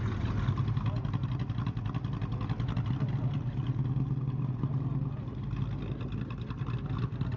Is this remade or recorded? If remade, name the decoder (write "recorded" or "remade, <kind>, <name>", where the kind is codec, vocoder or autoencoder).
recorded